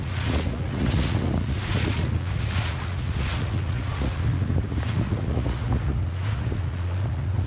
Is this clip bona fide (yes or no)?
no